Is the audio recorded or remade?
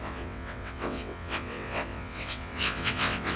remade